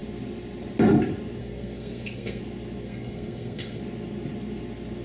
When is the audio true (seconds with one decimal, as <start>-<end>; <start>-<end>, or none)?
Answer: 0.0-1.4; 2.4-2.8; 3.8-5.0